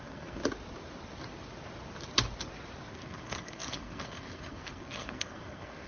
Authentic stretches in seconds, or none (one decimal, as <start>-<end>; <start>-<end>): 0.4-2.9